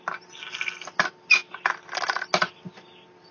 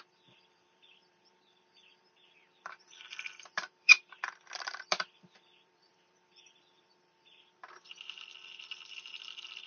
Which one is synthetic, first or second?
second